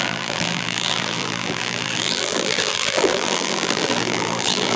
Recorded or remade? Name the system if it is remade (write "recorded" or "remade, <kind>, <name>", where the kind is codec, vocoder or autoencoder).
remade, vocoder, BigVGAN v2